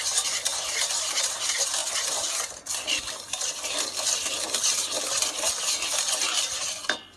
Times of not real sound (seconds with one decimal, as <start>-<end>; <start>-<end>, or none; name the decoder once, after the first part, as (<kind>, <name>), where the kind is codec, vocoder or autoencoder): none